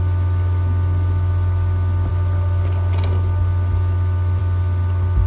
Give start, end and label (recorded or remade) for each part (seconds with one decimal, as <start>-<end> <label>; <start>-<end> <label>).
0.0-5.3 recorded

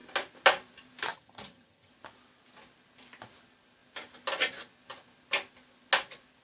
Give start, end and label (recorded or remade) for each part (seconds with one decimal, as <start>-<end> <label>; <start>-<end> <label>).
0.0-1.1 recorded; 1.1-1.9 remade; 1.9-6.4 recorded